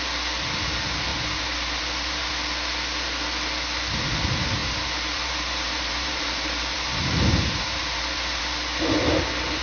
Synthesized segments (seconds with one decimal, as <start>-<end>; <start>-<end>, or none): 1.1-2.3; 4.6-8.4